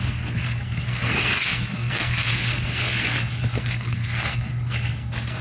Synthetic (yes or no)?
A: yes